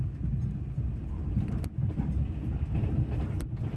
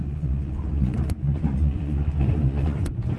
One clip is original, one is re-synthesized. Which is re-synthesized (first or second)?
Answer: second